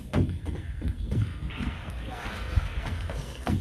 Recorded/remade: remade